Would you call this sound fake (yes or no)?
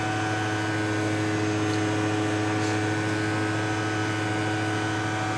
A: no